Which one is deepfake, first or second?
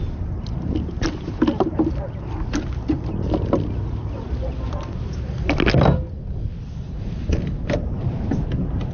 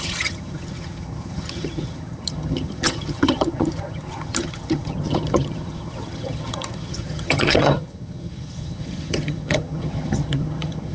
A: second